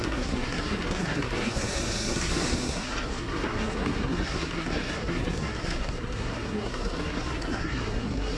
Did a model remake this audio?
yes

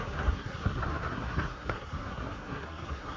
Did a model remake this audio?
yes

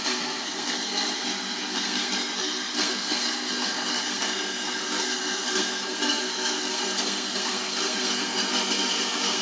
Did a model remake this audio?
yes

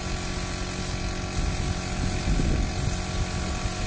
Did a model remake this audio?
no